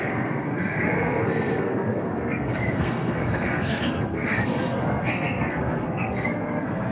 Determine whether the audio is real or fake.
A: fake